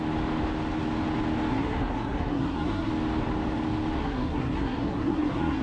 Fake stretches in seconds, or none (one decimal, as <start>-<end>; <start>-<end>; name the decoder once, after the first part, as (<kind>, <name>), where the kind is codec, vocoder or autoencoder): 1.5-2.9 (codec, SNAC); 4.0-5.6